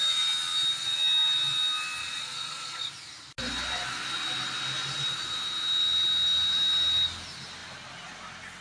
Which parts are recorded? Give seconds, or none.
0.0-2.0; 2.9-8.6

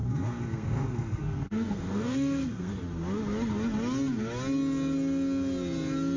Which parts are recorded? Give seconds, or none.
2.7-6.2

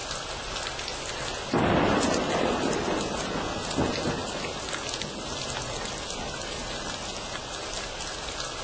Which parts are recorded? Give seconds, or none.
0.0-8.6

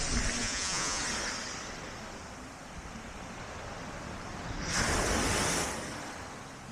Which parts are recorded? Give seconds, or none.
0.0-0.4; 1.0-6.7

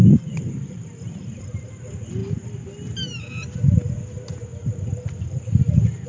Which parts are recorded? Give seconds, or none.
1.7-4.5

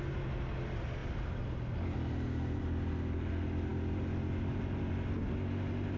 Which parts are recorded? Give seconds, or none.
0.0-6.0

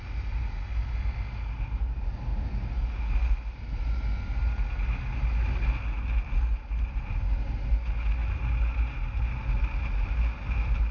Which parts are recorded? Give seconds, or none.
0.0-10.9

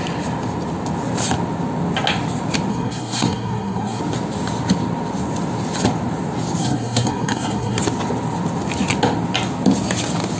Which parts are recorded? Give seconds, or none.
0.0-2.7; 4.0-6.6; 7.8-10.4